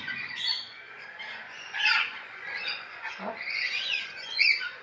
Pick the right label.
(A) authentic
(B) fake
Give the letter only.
B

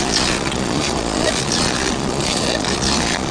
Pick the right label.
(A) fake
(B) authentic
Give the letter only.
A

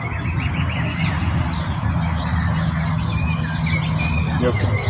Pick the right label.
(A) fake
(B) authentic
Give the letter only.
B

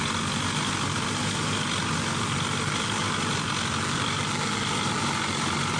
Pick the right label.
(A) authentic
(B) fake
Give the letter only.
A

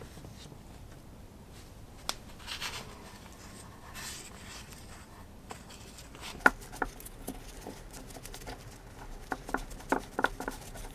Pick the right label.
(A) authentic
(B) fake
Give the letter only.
A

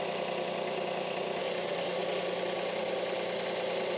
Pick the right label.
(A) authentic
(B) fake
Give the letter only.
A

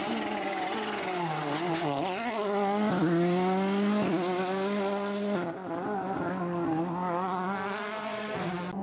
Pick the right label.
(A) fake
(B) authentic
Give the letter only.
B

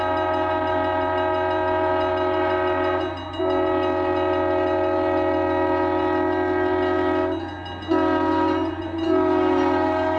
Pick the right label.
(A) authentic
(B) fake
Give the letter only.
A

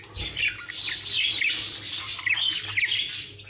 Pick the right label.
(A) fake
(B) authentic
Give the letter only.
B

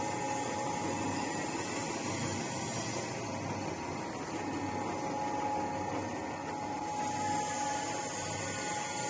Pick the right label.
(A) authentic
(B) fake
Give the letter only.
A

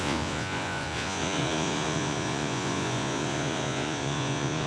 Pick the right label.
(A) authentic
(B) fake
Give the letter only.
B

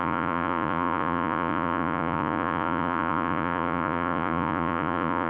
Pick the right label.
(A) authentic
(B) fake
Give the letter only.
B